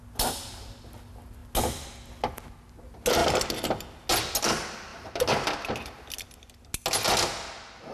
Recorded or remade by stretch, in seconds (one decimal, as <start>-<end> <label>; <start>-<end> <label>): 0.0-7.9 recorded